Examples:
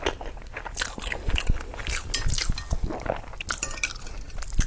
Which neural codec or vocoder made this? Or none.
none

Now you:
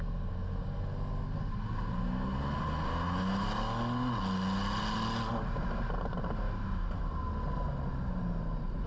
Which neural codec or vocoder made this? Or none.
none